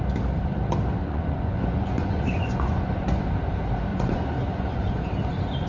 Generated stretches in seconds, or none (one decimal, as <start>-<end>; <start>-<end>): 1.0-3.3; 3.9-4.9